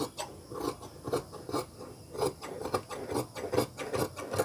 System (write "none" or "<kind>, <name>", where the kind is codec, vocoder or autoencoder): none